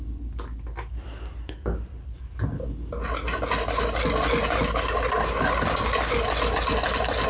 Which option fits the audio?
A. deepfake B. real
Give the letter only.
B